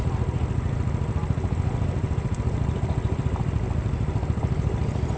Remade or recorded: recorded